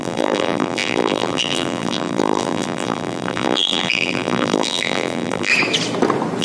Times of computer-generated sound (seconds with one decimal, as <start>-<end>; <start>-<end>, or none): 0.0-5.5